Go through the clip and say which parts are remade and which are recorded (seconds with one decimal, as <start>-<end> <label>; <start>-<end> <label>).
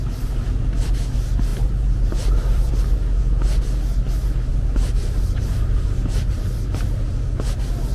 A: 0.0-1.5 recorded; 1.5-2.7 remade; 2.7-4.5 recorded; 4.5-7.0 remade; 7.0-7.9 recorded